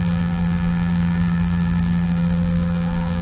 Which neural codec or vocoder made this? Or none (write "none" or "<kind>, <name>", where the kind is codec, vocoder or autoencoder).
vocoder, BigVGAN v2